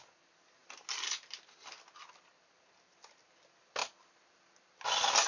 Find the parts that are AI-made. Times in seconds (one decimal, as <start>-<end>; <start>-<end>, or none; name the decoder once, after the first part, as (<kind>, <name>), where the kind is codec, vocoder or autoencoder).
none